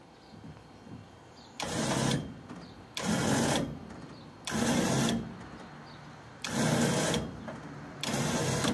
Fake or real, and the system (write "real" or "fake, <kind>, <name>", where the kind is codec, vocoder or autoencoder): real